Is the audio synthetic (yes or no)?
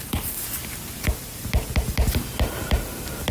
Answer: no